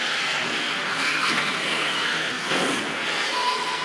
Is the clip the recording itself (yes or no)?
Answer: no